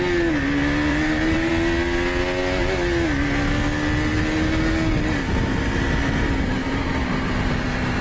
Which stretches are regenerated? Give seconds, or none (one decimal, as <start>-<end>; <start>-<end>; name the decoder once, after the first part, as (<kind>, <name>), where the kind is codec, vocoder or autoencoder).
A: 0.9-1.5 (vocoder, BigVGAN v2); 5.5-8.0

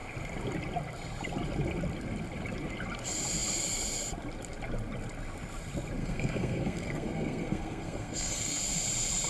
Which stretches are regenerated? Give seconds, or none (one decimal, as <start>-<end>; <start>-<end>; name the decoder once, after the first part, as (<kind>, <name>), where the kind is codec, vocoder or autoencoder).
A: 6.0-8.6 (codec, SNAC)

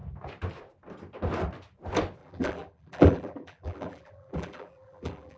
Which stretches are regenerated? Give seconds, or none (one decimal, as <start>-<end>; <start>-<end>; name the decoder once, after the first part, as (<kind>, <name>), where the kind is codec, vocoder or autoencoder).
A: 2.2-5.4 (vocoder, BigVGAN v2)

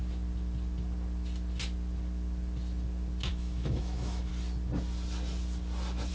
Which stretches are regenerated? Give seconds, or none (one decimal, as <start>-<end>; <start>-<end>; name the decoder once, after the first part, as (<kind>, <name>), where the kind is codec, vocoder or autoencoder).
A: 3.3-4.3 (autoencoder, DAC-VAE)

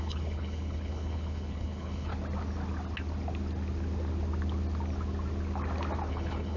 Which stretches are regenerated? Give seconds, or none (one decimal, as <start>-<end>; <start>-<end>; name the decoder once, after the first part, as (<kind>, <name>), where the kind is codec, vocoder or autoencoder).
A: 0.0-2.1 (codec, HILCodec); 6.1-6.6

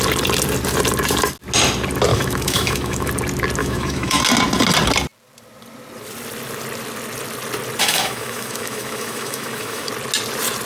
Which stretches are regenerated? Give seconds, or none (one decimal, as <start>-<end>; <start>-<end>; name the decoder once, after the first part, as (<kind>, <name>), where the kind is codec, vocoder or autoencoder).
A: 2.1-3.1 (autoencoder, DAC-VAE); 3.6-4.2; 7.8-9.9